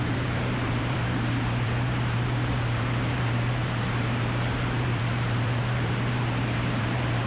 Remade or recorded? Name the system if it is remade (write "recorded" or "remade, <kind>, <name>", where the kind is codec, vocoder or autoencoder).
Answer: remade, vocoder, BigVGAN v2